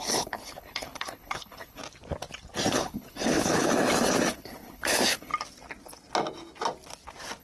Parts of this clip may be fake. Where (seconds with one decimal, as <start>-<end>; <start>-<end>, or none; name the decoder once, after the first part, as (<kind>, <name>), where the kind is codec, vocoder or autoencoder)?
0.0-1.8 (codec, HILCodec); 2.7-3.7; 4.3-5.3